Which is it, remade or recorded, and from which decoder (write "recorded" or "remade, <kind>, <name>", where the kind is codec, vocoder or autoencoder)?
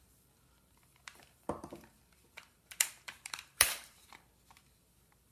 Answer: remade, vocoder, BigVGAN v2